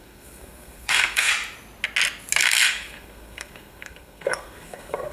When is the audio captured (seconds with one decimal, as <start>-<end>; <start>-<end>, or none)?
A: 1.3-2.4